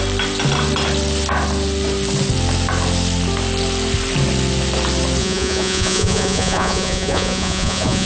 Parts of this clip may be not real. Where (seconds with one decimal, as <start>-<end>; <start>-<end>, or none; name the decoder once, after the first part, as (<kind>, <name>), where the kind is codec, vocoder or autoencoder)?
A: 5.2-8.1 (vocoder, Vocos)